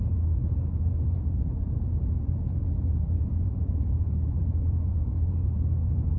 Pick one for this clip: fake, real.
fake